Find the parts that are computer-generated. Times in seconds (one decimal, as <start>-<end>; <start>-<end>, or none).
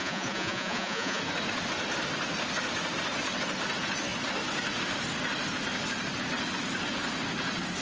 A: 0.0-1.2